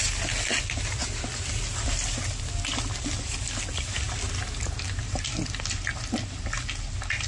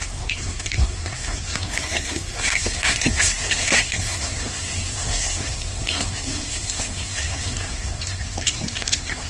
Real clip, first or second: first